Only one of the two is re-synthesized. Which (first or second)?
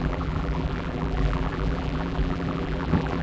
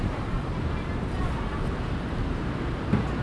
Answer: first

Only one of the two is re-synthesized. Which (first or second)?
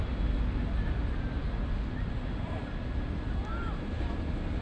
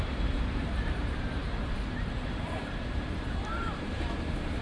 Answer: second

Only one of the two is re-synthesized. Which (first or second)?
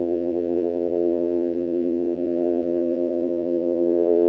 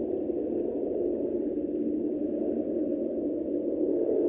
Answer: first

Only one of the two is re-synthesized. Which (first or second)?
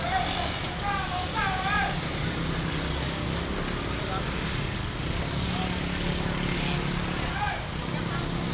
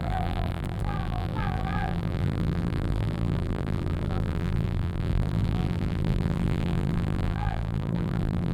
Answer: second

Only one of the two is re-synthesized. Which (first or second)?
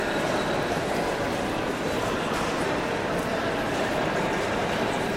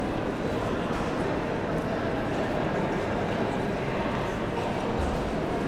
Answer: first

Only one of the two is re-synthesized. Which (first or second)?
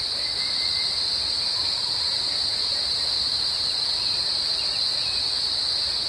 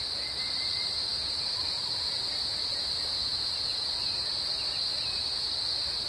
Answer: first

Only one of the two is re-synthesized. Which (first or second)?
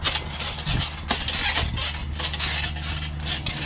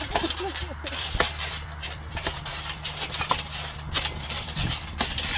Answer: second